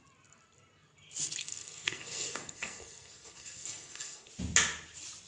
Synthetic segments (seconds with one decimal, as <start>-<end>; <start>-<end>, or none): 1.4-4.3